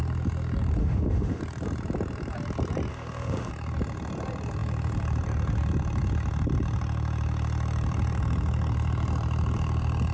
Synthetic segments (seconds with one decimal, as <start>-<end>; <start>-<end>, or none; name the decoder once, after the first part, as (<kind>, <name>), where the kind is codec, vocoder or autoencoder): 0.8-1.4 (autoencoder, DAC-VAE); 2.9-3.5